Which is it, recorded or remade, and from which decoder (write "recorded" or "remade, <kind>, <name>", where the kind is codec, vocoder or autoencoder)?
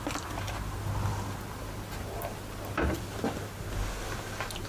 recorded